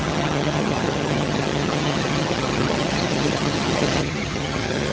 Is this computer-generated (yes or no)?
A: yes